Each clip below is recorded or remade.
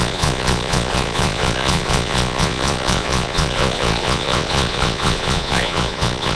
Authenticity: remade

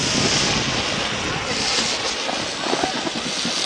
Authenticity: recorded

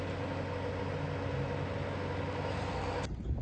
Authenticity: recorded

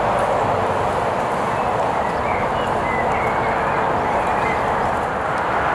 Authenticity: recorded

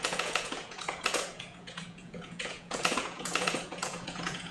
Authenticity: remade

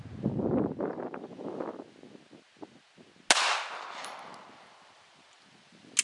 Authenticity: recorded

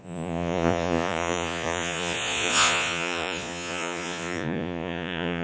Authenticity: remade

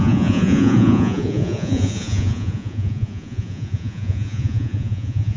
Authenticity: remade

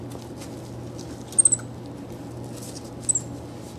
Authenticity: recorded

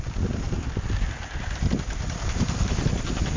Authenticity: recorded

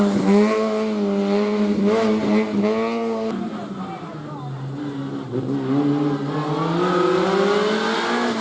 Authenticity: recorded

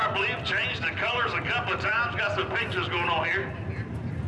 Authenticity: recorded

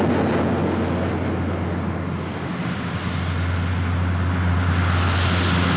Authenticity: recorded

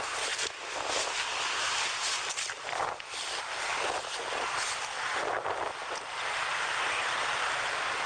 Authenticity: recorded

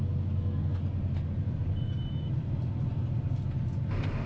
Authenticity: recorded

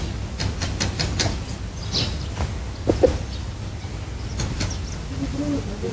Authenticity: recorded